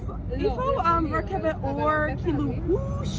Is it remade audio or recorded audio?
recorded